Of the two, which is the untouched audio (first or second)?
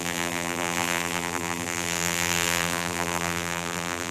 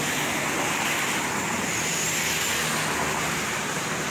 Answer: second